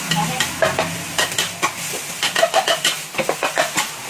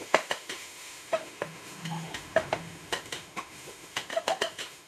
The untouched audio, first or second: first